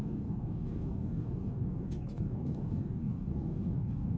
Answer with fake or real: fake